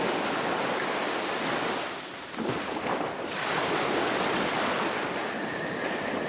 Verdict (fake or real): real